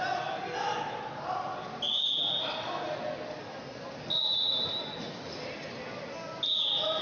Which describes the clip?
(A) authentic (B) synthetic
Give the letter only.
A